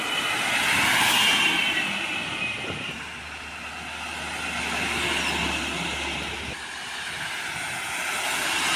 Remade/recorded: recorded